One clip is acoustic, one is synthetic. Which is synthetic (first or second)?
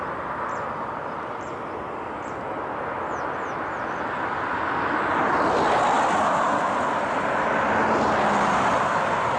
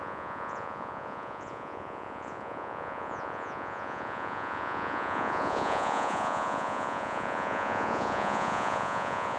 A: second